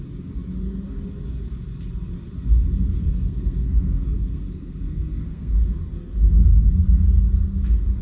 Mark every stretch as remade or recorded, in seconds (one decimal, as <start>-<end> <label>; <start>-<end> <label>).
0.0-3.0 recorded; 3.0-5.5 remade; 5.5-8.0 recorded